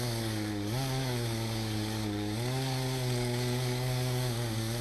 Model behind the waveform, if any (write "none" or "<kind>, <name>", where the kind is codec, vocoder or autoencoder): codec, DAC